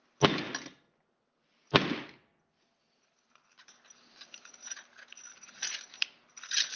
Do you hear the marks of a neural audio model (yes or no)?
no